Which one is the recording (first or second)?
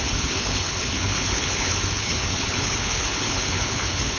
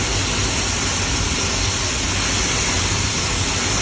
second